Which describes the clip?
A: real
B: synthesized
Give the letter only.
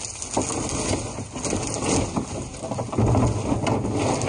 A